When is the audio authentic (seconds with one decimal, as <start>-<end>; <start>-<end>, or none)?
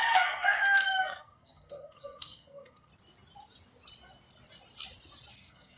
2.9-5.3